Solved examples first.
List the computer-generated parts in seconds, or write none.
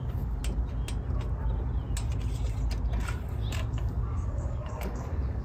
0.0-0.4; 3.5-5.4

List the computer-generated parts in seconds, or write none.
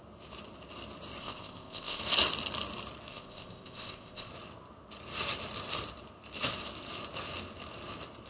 1.2-2.0; 3.1-4.3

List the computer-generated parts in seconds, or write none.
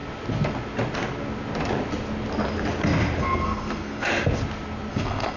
3.2-4.1; 4.9-5.4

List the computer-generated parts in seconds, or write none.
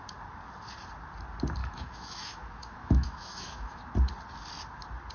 1.6-3.8